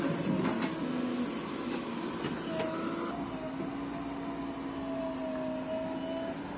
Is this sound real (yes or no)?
yes